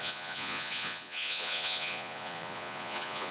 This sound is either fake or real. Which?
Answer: fake